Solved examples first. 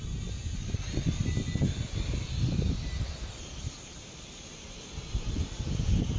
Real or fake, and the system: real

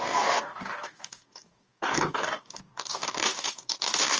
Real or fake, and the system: fake, codec, DAC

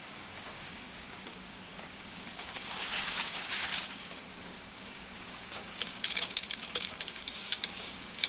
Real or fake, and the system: fake, codec, DAC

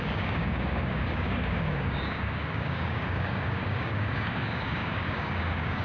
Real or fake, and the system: fake, codec, DAC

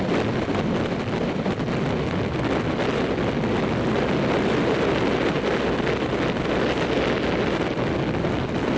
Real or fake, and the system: real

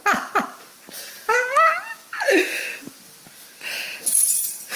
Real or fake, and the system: real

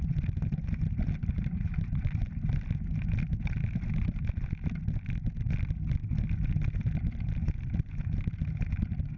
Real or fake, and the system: real